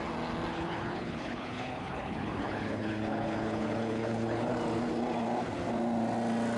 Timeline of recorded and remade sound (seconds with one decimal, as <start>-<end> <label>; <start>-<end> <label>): 0.0-0.5 recorded; 0.5-4.5 remade; 4.5-6.6 recorded